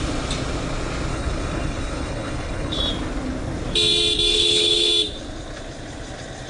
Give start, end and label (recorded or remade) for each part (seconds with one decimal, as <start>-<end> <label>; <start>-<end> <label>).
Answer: 0.0-1.1 recorded; 1.1-2.8 remade; 2.8-4.3 recorded; 4.3-4.9 remade; 4.9-6.5 recorded